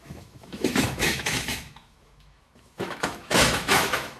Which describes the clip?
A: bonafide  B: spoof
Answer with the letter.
B